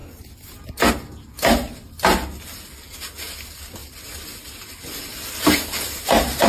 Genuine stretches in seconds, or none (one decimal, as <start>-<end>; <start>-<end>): 0.0-6.5